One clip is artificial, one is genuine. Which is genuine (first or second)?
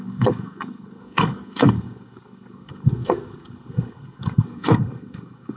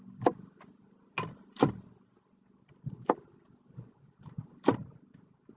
second